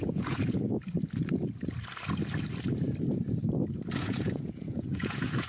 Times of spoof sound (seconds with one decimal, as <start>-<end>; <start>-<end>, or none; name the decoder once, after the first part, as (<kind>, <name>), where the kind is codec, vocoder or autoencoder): 0.0-0.7 (vocoder, Vocos); 4.0-5.5